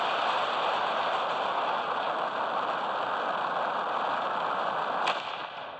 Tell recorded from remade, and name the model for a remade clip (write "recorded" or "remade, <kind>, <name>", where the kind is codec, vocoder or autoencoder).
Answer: remade, vocoder, BigVGAN v2